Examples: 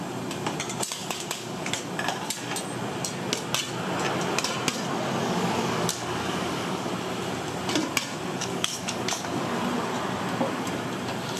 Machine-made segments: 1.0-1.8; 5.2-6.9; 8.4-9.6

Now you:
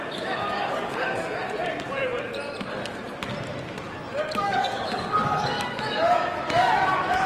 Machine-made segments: 0.0-1.4; 4.3-7.3

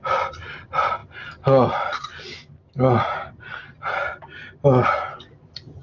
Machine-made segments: none